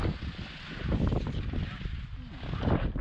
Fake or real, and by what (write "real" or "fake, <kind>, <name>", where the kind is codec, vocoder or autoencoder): real